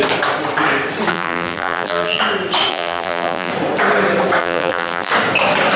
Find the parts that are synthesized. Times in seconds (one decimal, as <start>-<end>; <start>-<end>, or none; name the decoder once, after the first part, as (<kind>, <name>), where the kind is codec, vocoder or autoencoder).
1.1-2.2 (vocoder, BigVGAN v2); 2.7-3.5; 4.4-5.1